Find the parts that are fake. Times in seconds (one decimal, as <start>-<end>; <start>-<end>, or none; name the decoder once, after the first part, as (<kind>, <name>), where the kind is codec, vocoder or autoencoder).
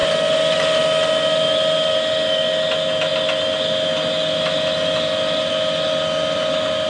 none